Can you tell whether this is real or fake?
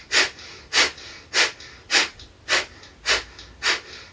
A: real